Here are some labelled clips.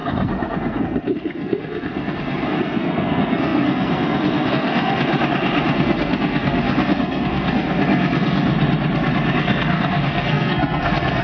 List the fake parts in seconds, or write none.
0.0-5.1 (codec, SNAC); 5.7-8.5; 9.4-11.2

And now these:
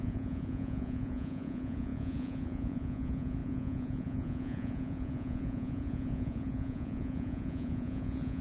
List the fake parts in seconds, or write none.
0.0-8.4 (vocoder, Vocos)